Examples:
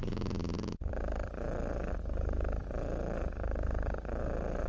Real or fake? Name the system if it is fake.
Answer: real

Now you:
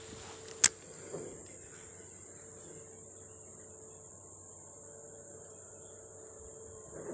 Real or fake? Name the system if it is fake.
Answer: real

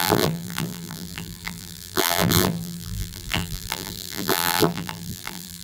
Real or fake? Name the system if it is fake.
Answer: fake, vocoder, BigVGAN v2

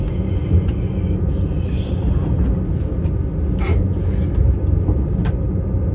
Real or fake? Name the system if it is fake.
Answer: real